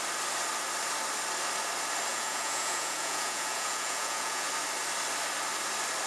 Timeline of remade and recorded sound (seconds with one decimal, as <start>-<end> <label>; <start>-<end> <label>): 0.0-2.1 recorded; 2.1-4.5 remade; 4.5-6.1 recorded